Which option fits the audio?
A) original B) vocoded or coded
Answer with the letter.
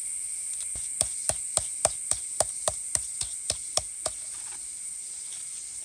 A